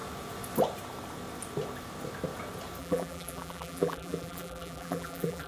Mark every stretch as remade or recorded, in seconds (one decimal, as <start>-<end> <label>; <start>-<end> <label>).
0.0-2.8 recorded; 2.8-5.5 remade